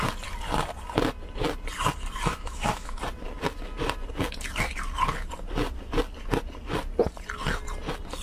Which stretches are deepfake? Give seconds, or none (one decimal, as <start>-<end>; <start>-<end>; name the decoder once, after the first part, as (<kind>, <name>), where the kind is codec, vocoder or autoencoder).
2.3-3.0 (autoencoder, DAC-VAE)